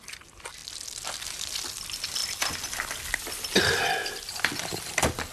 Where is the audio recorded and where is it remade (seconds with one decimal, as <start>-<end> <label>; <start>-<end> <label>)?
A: 0.0-2.2 remade; 2.2-3.6 recorded; 3.6-5.3 remade